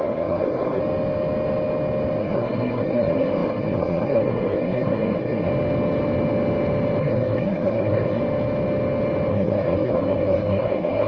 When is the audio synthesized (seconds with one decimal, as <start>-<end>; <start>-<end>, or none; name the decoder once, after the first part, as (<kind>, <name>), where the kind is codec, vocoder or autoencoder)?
0.0-0.8 (codec, SNAC); 2.2-5.5; 7.0-8.2; 9.3-11.1